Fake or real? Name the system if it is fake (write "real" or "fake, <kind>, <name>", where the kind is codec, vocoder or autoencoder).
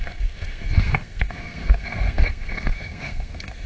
fake, codec, SNAC